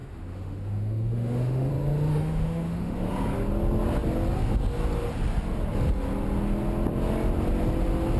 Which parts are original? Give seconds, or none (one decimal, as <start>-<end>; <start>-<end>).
1.7-2.1; 3.1-8.2